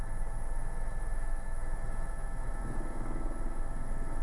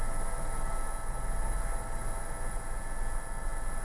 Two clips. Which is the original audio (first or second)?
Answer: second